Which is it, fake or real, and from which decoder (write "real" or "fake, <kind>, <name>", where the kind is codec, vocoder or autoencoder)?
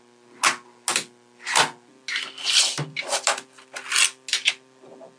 real